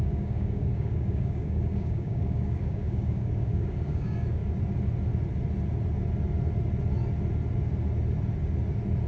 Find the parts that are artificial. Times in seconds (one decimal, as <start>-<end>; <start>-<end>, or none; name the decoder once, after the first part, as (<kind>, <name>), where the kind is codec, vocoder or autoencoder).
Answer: 0.0-4.4 (codec, DAC)

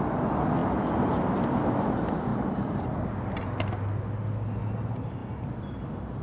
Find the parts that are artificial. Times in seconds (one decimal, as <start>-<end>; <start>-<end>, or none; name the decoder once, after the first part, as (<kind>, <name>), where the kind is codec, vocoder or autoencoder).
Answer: 2.3-2.9 (vocoder, BigVGAN v2)

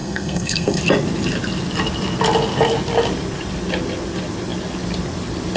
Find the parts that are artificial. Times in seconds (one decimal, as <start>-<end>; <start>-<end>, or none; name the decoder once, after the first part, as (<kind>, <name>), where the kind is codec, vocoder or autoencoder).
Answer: 0.0-0.8 (codec, SNAC)

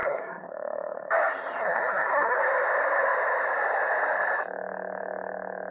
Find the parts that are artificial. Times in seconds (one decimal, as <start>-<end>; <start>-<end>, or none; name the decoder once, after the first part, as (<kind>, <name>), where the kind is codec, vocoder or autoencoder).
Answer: 0.0-1.1 (codec, SNAC); 1.6-2.4

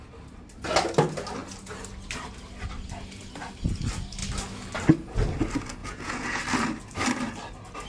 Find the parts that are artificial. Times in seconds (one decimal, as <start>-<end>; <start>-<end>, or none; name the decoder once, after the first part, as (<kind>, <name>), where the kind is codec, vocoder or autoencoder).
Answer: 5.8-6.4 (vocoder, Vocos)